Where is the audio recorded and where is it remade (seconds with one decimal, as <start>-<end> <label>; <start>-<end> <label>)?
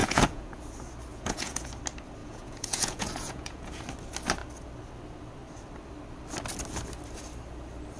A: 0.0-0.6 remade; 0.6-1.1 recorded; 1.1-1.7 remade; 1.7-2.2 recorded; 2.2-3.8 remade; 3.8-8.0 recorded